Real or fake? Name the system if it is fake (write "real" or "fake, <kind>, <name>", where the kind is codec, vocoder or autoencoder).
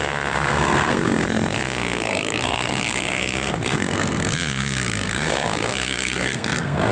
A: fake, codec, SNAC